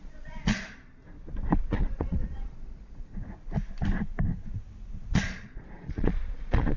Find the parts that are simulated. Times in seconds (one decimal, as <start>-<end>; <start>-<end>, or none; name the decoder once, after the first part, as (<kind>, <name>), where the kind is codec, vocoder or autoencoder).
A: 0.0-1.0 (vocoder, Vocos); 1.5-3.1; 5.1-6.8